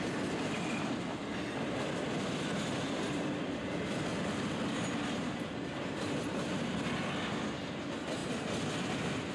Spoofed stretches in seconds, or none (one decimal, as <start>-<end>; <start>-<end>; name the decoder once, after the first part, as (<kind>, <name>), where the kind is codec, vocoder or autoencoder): none

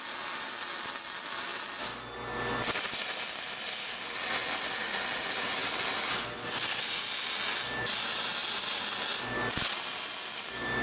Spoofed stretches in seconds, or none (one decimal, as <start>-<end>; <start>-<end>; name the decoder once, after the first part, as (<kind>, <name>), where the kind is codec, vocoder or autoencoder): none

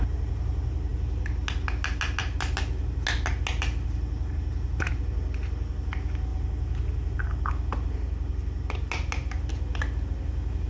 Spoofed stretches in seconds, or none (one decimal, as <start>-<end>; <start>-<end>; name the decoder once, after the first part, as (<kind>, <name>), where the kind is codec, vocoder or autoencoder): none

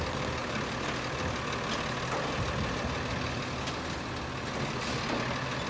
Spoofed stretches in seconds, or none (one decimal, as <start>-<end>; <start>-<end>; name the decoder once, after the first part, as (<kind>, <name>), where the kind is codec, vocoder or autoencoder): none

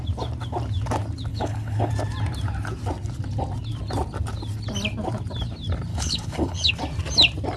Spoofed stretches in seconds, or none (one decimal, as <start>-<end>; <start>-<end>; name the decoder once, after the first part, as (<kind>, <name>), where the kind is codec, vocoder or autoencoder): 1.3-1.9 (codec, HILCodec); 5.9-6.7